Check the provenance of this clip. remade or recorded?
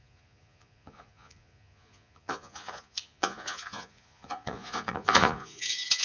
remade